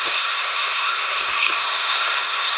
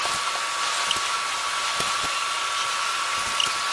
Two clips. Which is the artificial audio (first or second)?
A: first